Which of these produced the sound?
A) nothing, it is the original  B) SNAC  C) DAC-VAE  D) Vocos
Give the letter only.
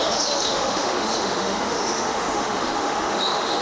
C